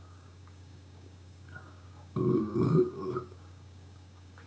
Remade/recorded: remade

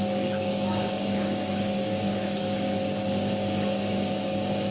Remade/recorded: remade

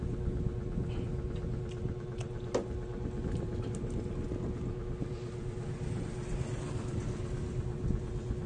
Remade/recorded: recorded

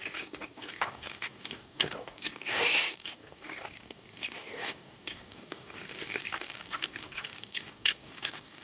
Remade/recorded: remade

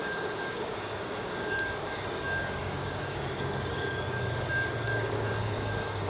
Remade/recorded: remade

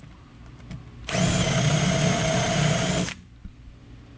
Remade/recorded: recorded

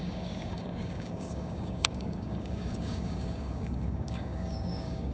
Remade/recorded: remade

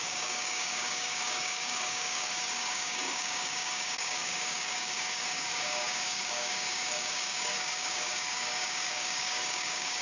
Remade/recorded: remade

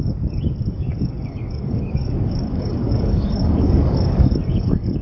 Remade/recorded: remade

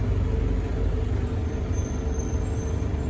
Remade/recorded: recorded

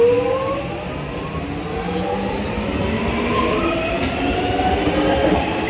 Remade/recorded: recorded